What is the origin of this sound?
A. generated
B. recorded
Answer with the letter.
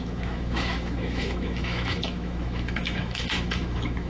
A